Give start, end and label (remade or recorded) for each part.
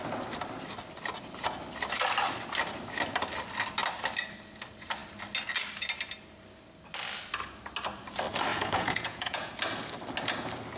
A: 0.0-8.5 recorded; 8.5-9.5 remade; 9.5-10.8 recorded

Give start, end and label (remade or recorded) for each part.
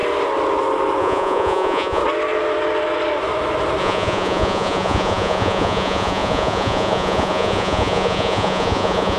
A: 0.0-1.0 recorded; 1.0-2.0 remade; 2.0-3.8 recorded; 3.8-9.2 remade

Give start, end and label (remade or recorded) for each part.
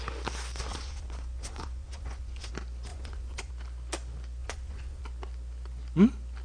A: 0.0-0.7 recorded; 0.7-2.5 remade; 2.5-2.9 recorded; 2.9-3.5 remade; 3.5-4.4 recorded; 4.4-5.0 remade; 5.0-6.4 recorded